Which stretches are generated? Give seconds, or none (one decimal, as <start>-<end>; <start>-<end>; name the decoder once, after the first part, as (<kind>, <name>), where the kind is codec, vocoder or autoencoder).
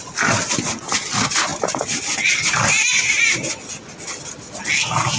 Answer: none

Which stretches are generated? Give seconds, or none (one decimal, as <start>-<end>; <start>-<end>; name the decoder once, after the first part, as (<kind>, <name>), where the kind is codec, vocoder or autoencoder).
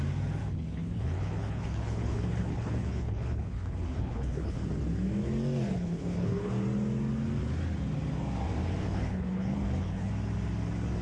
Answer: 0.4-4.6 (codec, HILCodec); 5.7-6.5; 8.8-10.1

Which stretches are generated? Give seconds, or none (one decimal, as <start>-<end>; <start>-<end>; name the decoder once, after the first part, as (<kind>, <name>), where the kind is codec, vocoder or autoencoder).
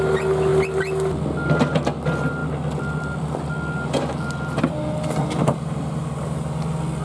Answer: none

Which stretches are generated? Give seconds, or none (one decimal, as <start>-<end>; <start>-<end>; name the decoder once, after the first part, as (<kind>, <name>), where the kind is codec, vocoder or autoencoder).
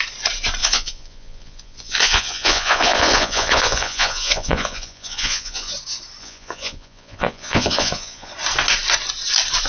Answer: 0.6-5.7 (vocoder, Vocos); 6.2-8.3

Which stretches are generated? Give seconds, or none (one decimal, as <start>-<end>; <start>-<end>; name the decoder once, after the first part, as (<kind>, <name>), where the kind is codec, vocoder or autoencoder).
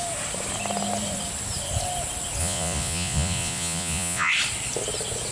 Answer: 2.4-4.3 (vocoder, Vocos)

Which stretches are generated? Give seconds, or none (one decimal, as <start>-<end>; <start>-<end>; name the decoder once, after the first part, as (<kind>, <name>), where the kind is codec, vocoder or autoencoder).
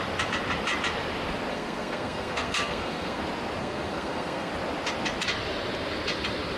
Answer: 1.5-3.2 (codec, SNAC); 3.6-4.5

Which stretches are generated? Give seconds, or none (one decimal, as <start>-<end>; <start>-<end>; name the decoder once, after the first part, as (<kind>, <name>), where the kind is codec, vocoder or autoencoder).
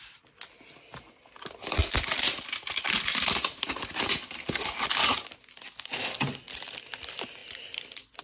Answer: 7.4-8.2 (vocoder, BigVGAN v2)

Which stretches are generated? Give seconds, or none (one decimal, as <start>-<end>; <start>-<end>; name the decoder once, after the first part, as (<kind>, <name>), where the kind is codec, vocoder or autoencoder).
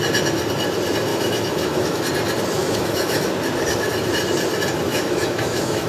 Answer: 1.1-2.0 (autoencoder, DAC-VAE); 2.6-3.3; 4.9-5.9